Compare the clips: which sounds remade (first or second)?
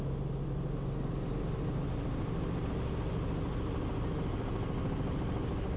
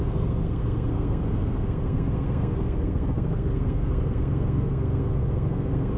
second